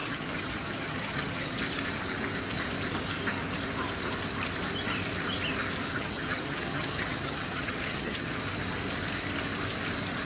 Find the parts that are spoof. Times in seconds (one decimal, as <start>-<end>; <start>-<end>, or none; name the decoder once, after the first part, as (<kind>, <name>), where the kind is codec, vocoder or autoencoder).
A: 0.0-1.6 (vocoder, HiFi-GAN); 5.9-8.4